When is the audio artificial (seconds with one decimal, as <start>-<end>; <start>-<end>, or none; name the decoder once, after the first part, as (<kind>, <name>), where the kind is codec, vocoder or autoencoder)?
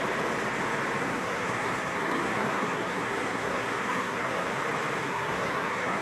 1.0-4.6 (codec, SNAC); 5.0-6.0